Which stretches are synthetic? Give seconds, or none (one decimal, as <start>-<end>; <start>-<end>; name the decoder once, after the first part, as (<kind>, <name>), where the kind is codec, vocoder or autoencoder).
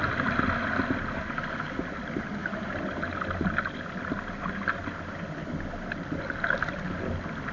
none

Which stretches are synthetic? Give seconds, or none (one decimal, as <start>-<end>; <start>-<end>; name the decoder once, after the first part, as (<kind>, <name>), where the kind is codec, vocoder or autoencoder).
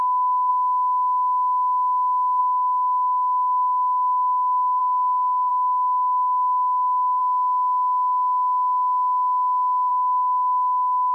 0.0-0.5 (codec, DAC); 2.4-7.2; 9.9-11.1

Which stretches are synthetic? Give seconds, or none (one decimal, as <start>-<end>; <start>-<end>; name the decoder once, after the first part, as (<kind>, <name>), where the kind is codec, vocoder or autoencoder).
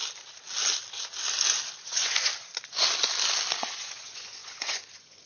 1.8-2.3 (vocoder, Vocos); 3.6-5.3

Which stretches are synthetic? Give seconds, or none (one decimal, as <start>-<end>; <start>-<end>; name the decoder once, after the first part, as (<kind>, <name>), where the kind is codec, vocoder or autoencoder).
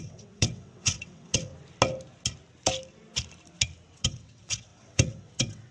0.0-1.5 (vocoder, WaveNeXt); 3.9-5.7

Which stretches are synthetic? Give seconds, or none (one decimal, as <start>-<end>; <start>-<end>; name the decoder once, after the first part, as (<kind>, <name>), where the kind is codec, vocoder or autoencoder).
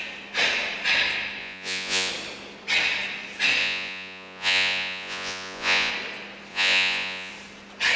1.4-2.1 (vocoder, Vocos); 3.6-5.9; 6.5-7.3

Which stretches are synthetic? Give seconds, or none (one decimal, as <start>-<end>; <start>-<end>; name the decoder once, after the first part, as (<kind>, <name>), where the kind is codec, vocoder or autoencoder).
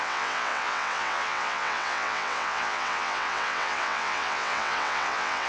0.0-5.5 (vocoder, WaveNeXt)